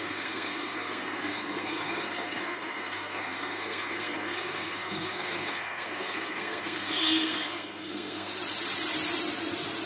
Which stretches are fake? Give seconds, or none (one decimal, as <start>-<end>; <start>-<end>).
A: 0.0-8.3

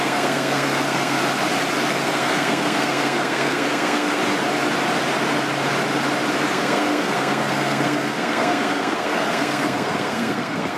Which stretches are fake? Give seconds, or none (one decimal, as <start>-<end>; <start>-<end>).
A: 0.0-1.2; 1.9-4.2; 6.5-10.8

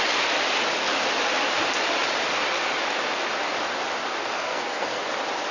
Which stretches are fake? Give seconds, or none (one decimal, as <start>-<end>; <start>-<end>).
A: 4.2-5.0

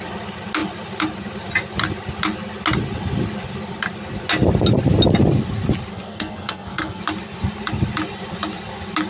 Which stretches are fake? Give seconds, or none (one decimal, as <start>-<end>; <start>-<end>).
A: 5.9-7.0